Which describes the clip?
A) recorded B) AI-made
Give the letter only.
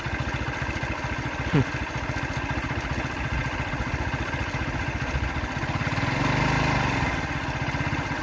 A